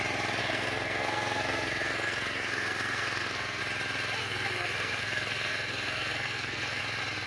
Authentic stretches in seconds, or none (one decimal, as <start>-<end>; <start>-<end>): 0.0-0.4; 3.6-4.2; 6.8-7.3